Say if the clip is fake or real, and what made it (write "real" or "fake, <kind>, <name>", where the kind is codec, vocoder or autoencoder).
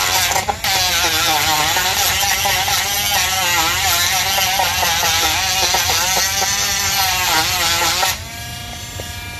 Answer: real